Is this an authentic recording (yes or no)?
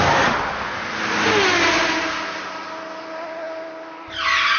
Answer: yes